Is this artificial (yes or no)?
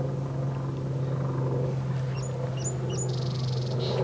no